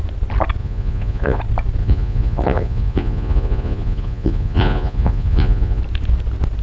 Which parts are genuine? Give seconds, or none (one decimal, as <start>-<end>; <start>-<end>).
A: 0.0-0.6; 1.4-1.8; 5.8-6.6